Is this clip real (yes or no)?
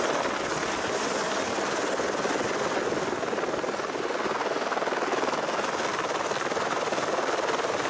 yes